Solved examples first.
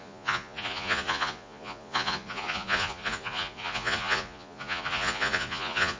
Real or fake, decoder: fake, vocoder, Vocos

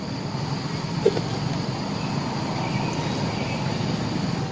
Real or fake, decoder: real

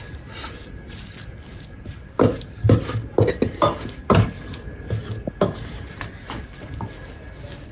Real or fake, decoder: real